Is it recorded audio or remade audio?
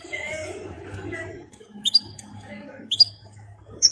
remade